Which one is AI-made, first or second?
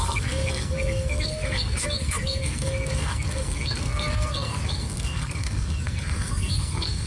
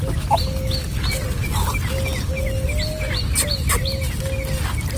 first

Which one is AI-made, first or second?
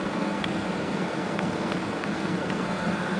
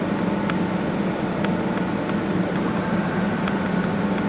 first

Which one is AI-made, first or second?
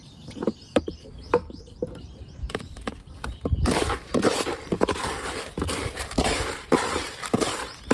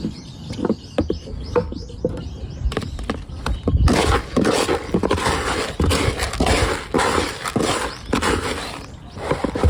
first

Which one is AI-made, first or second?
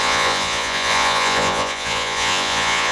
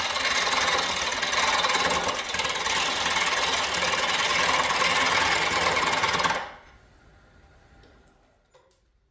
first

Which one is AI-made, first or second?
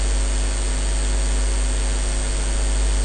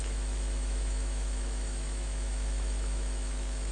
second